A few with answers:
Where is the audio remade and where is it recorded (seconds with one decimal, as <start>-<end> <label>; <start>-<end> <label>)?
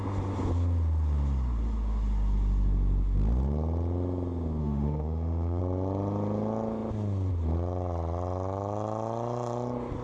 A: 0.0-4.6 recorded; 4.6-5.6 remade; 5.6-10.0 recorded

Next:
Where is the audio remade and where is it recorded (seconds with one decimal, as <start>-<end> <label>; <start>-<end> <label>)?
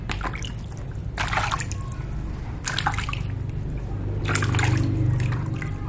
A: 0.0-5.9 recorded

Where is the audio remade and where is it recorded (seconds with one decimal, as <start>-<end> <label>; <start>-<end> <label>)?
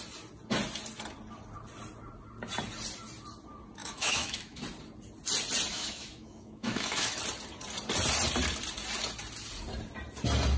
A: 0.0-3.8 recorded; 3.8-4.6 remade; 4.6-5.7 recorded; 5.7-7.2 remade; 7.2-10.6 recorded